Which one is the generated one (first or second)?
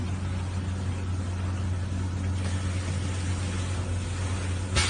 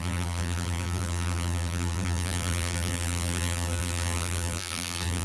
second